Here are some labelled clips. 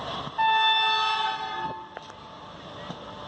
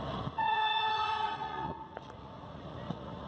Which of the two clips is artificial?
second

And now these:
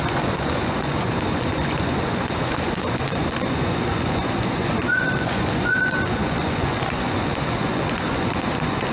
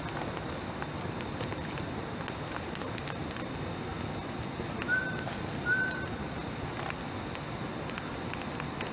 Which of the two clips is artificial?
first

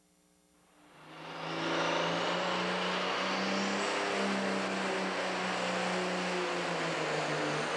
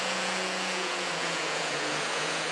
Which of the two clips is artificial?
second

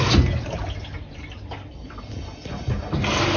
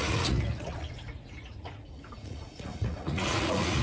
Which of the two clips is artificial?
second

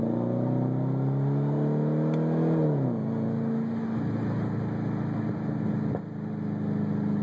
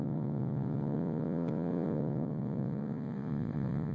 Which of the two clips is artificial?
second